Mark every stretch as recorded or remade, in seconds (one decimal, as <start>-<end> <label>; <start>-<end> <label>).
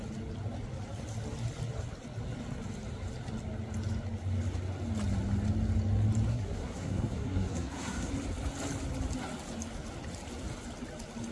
0.0-6.3 recorded; 6.3-8.1 remade; 8.1-11.3 recorded